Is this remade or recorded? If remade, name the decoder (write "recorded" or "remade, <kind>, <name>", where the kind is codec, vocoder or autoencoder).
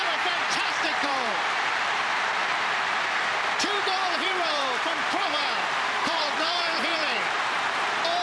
remade, vocoder, BigVGAN v2